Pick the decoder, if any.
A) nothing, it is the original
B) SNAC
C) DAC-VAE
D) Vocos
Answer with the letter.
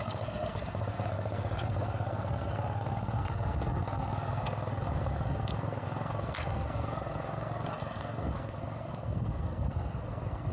B